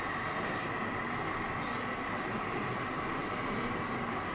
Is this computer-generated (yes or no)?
no